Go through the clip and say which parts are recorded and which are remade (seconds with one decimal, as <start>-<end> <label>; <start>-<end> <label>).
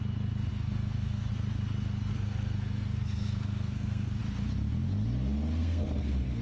0.0-0.5 recorded; 0.5-1.3 remade; 1.3-2.1 recorded; 2.1-4.2 remade; 4.2-5.6 recorded; 5.6-6.4 remade